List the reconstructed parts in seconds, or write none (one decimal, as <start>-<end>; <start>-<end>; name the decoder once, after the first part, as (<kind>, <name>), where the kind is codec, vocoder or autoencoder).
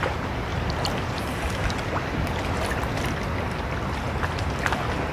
none